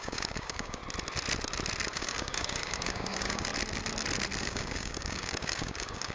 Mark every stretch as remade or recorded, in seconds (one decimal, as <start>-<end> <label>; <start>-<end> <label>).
0.0-0.8 remade; 0.8-1.9 recorded; 1.9-3.5 remade; 3.5-4.4 recorded; 4.4-6.1 remade